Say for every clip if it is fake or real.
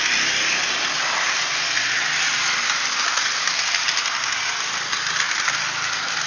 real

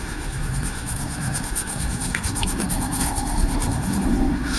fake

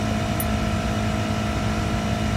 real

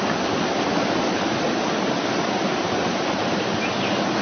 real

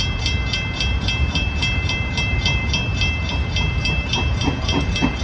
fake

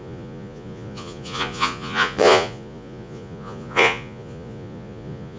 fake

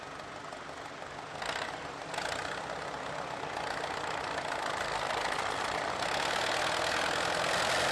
real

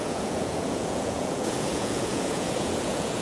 fake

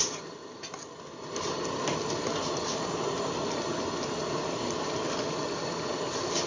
real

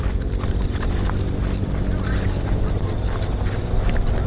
real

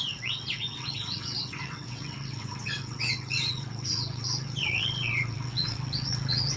fake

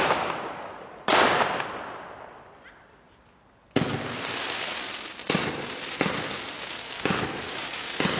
real